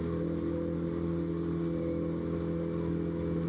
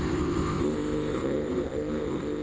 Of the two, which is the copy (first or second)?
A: second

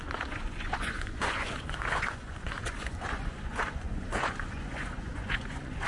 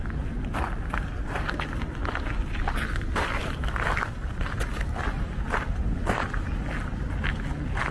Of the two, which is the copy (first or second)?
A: first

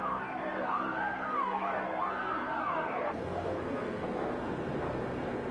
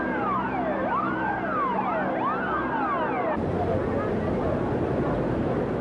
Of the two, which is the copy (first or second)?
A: first